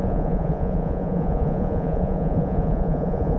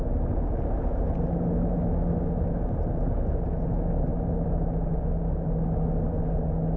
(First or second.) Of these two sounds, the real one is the second